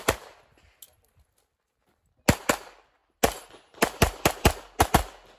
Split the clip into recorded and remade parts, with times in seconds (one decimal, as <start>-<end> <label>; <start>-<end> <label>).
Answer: 0.0-5.4 recorded